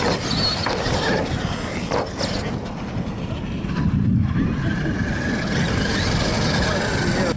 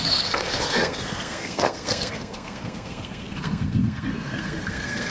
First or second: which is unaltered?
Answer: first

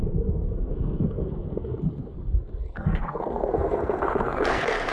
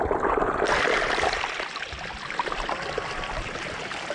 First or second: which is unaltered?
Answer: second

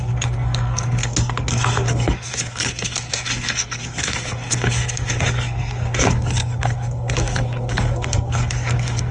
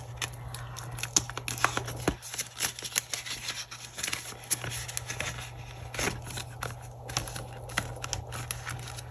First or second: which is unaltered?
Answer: second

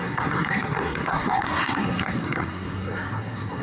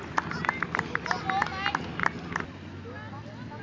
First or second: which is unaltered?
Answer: second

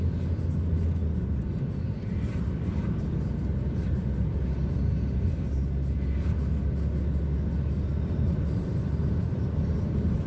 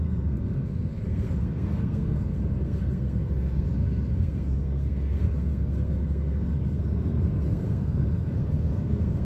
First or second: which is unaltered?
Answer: first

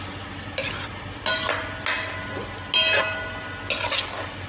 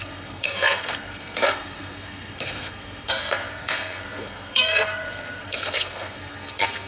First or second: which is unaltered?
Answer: first